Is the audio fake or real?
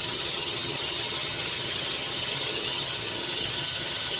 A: fake